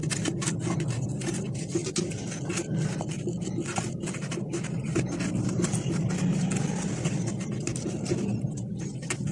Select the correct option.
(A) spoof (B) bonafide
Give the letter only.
B